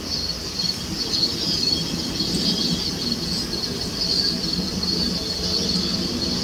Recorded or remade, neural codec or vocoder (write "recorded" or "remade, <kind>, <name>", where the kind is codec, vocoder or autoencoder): recorded